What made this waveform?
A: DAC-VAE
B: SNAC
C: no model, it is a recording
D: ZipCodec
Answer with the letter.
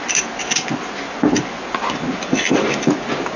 C